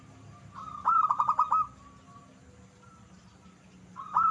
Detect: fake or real real